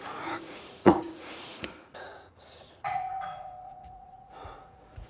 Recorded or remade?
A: remade